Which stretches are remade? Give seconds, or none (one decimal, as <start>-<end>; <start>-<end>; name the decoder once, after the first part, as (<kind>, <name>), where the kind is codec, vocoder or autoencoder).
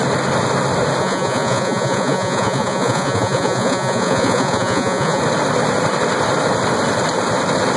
1.0-5.2 (vocoder, Vocos)